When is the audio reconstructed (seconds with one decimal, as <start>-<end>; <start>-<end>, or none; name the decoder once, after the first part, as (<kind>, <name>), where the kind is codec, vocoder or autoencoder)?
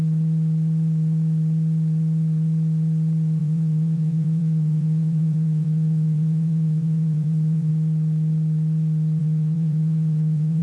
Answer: 3.4-7.7 (vocoder, WaveNeXt); 9.2-10.6